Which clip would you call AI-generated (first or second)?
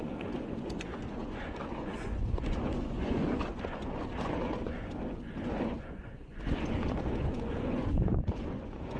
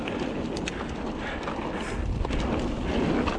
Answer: first